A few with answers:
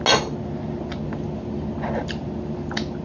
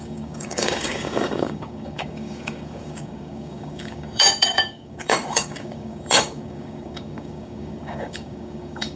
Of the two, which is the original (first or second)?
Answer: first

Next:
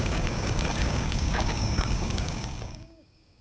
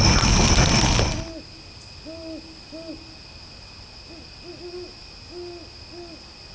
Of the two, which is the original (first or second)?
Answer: second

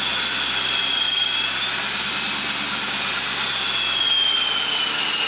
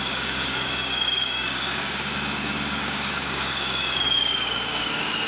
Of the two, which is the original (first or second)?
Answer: first